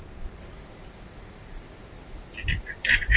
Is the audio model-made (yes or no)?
no